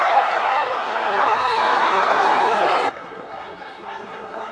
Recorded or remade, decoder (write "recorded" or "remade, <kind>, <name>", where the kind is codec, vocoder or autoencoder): remade, codec, SNAC